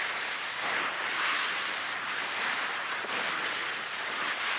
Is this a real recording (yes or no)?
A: yes